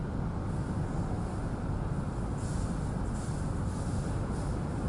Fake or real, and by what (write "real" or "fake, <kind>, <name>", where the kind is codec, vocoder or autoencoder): real